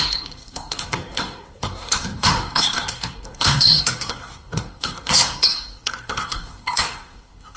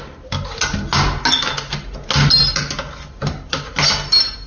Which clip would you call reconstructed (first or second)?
first